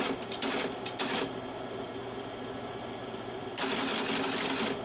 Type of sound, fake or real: real